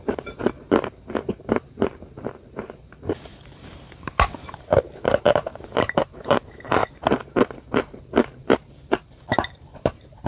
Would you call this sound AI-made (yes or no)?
yes